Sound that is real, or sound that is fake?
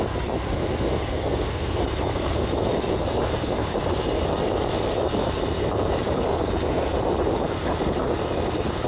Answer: fake